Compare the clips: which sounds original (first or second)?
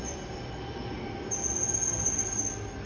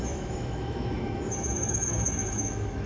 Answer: first